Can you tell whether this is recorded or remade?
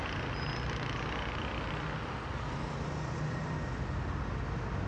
recorded